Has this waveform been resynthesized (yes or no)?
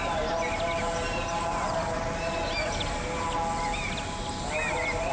no